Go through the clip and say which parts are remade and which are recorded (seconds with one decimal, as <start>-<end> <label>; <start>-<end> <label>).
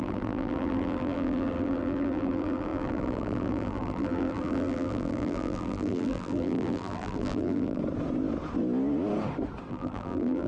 0.0-7.8 remade; 7.8-9.7 recorded; 9.7-10.5 remade